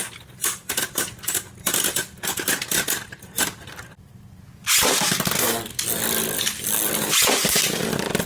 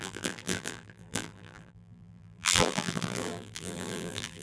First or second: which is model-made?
second